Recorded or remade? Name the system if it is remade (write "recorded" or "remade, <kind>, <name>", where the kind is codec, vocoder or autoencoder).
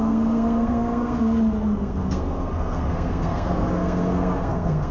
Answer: remade, codec, SNAC